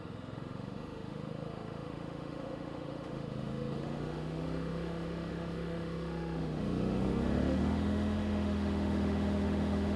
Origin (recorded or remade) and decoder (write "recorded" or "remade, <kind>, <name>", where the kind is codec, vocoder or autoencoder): remade, autoencoder, DAC-VAE